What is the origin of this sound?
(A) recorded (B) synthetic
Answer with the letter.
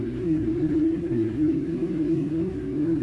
B